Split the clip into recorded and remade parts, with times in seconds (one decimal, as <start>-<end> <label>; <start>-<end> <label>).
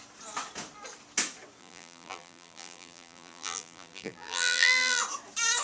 0.0-1.6 recorded; 1.6-5.0 remade; 5.0-5.6 recorded